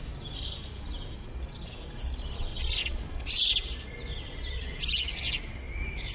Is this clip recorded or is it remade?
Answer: recorded